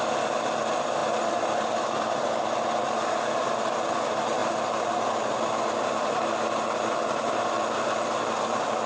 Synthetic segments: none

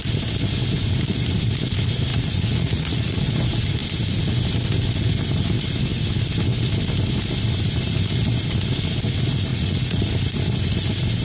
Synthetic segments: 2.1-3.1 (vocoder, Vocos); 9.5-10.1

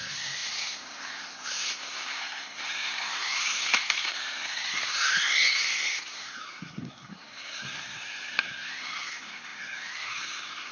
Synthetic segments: 0.0-10.7 (codec, SNAC)

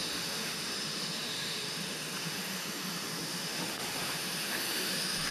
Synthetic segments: 0.0-5.3 (autoencoder, DAC-VAE)

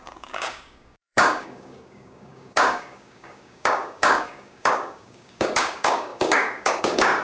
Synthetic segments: 0.0-7.2 (codec, DAC)

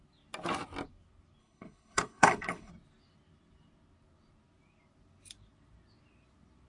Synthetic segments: 1.4-2.7 (codec, HILCodec)

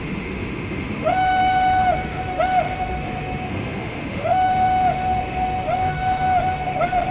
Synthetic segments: 0.0-7.1 (autoencoder, DAC-VAE)